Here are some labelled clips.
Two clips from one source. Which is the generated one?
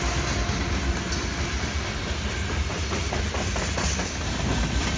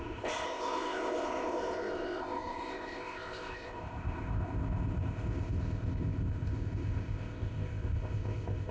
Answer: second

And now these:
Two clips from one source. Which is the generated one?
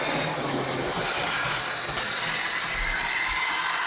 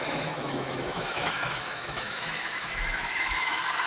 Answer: second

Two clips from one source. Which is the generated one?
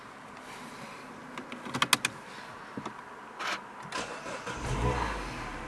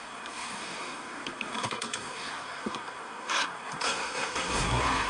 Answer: second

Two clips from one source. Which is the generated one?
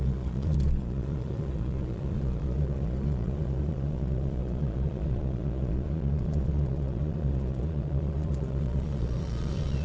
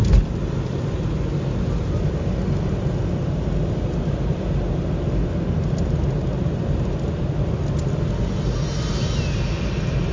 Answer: first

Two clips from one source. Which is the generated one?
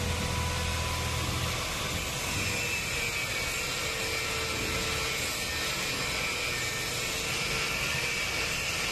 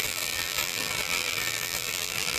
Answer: second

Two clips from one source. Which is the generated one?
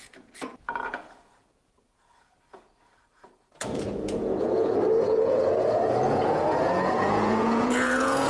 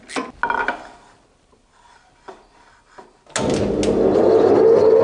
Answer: first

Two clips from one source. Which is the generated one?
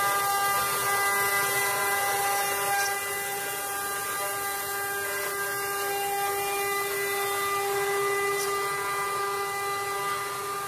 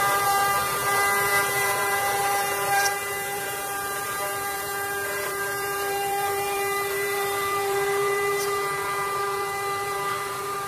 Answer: second